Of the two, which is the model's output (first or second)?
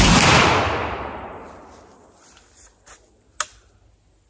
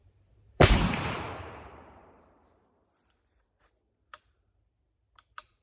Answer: second